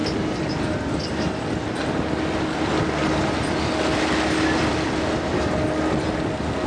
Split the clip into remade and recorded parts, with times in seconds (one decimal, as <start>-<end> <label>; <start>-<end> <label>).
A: 0.0-6.7 recorded

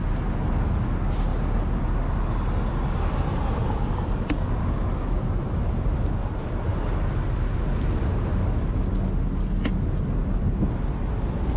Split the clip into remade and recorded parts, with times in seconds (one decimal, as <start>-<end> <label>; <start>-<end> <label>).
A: 0.0-11.6 recorded